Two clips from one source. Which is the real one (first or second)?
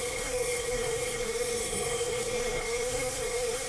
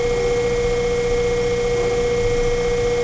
second